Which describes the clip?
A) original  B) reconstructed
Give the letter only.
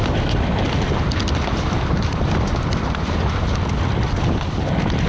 A